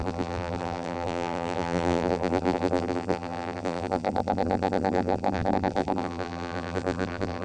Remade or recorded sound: remade